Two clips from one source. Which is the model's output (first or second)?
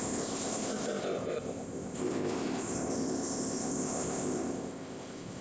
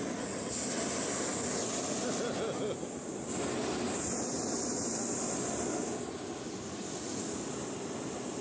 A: first